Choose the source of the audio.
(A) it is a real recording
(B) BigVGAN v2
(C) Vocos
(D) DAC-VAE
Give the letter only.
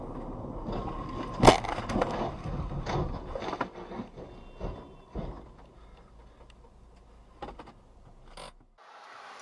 A